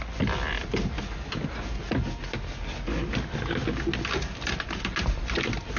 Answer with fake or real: real